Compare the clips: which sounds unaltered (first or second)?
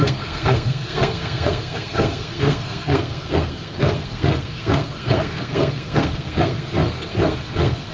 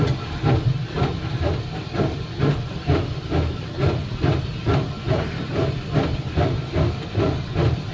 second